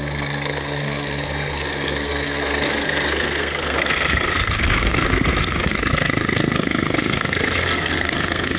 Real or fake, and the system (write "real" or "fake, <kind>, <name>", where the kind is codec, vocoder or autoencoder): fake, codec, SNAC